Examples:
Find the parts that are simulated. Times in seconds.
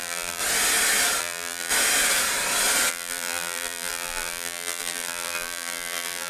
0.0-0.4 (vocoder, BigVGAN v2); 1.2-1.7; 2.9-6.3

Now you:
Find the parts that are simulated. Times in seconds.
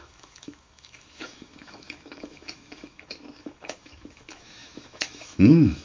0.0-5.8 (autoencoder, DAC-VAE)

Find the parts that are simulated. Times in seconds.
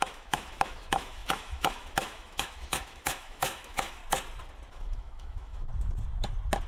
0.0-4.0 (autoencoder, DAC-VAE); 4.7-5.7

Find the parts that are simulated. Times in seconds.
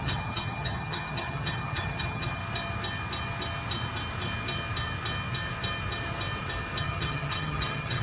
0.0-2.4 (vocoder, HiFi-GAN); 6.8-8.0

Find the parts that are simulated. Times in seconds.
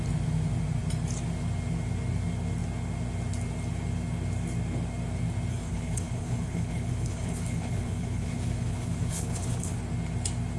5.5-9.8 (codec, HILCodec)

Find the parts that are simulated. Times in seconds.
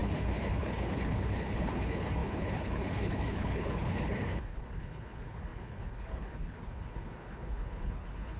0.0-8.4 (codec, HILCodec)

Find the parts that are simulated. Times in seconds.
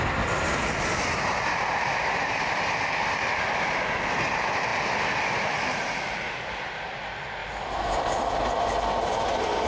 none